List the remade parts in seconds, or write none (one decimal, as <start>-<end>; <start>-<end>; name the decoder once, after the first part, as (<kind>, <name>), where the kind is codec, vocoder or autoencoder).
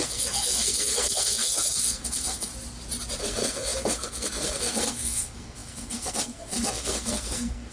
0.0-2.5 (codec, SNAC); 3.2-7.7